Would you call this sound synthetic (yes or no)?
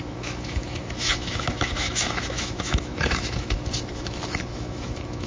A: yes